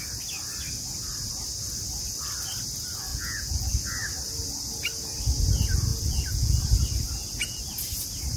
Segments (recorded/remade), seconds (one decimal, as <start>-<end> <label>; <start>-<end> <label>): 0.0-3.1 recorded; 3.1-3.7 remade; 3.7-5.9 recorded; 5.9-6.6 remade; 6.6-8.4 recorded